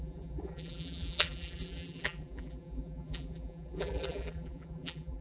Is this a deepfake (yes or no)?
yes